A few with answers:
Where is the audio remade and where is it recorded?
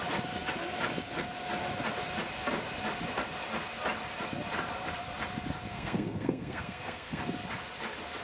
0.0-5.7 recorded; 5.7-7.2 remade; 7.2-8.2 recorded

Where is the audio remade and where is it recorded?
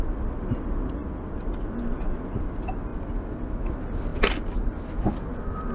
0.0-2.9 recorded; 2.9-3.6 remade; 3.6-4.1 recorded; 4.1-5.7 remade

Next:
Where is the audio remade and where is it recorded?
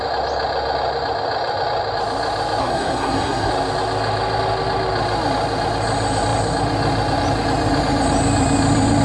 0.0-2.6 recorded; 2.6-3.5 remade; 3.5-9.0 recorded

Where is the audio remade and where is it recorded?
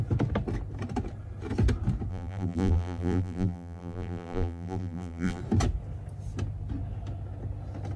0.0-2.1 recorded; 2.1-5.4 remade; 5.4-8.0 recorded